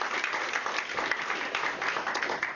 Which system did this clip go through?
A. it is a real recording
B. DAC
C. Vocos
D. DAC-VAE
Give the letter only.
A